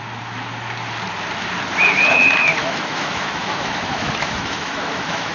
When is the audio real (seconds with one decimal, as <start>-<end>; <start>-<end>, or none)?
0.0-2.6